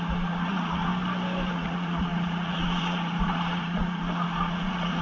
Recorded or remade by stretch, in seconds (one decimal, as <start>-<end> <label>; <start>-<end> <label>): 0.0-0.9 remade; 0.9-1.5 recorded; 1.5-5.0 remade

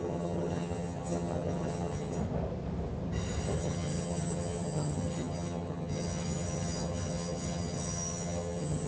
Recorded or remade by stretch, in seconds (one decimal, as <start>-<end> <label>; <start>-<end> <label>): 0.0-2.2 remade; 2.2-3.6 recorded; 3.6-8.9 remade

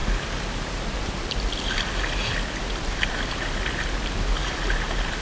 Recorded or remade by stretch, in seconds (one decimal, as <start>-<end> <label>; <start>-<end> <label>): 0.0-5.2 recorded

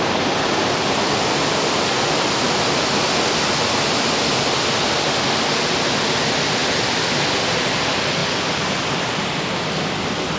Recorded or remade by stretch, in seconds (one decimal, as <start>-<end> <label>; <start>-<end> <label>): 0.0-6.6 recorded; 6.6-7.6 remade; 7.6-8.2 recorded; 8.2-10.4 remade

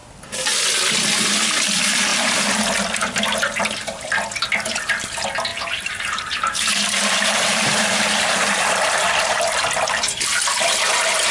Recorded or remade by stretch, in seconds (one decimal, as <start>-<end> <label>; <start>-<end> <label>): 0.0-2.1 recorded; 2.1-2.6 remade; 2.6-5.5 recorded; 5.5-9.6 remade; 9.6-11.3 recorded

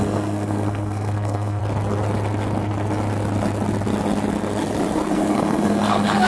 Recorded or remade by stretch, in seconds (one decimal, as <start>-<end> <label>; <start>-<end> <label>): 0.0-1.6 remade; 1.6-5.1 recorded; 5.1-6.3 remade